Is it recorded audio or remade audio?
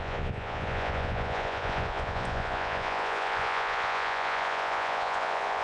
remade